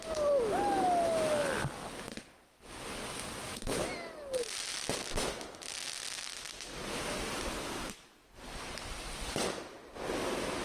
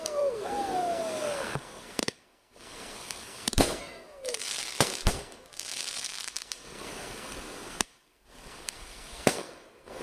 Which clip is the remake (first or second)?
second